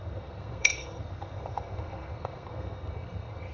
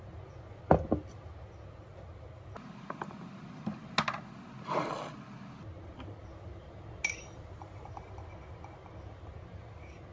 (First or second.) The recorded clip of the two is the second